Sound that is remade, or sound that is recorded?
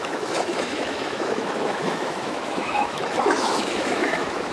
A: remade